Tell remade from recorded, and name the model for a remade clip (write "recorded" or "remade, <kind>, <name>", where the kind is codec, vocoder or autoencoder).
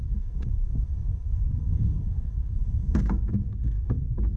remade, codec, SNAC